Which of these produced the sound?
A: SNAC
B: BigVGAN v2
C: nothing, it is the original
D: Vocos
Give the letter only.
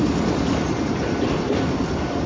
C